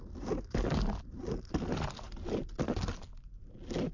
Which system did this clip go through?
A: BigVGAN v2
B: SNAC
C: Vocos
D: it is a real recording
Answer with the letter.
D